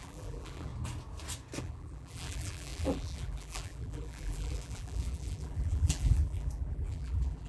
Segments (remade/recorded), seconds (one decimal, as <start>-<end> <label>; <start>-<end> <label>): 0.0-0.7 remade; 0.7-1.6 recorded; 1.6-7.5 remade